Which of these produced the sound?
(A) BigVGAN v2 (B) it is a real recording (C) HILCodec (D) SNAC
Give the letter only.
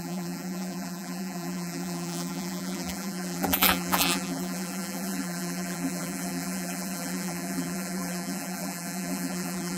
A